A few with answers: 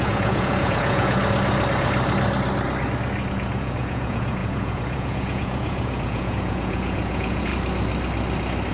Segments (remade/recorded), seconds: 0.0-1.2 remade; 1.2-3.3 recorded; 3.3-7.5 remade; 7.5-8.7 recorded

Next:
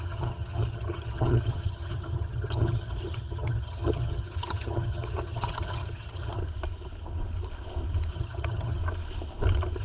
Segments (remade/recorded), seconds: 0.0-6.4 remade; 6.4-8.1 recorded; 8.1-8.8 remade; 8.8-9.8 recorded

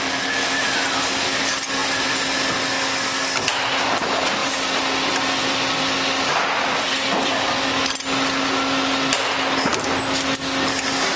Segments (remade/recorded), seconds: 0.0-11.2 recorded

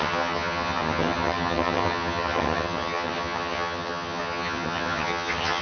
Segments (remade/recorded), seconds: 0.0-5.6 remade

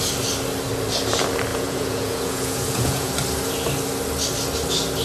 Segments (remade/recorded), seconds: 0.0-1.5 recorded; 1.5-3.1 remade; 3.1-5.0 recorded